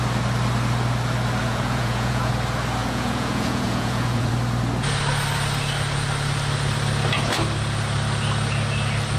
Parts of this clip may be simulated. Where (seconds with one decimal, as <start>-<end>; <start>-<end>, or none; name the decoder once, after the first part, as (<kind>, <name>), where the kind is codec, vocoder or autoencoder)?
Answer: 1.4-2.3 (vocoder, Vocos); 2.8-4.3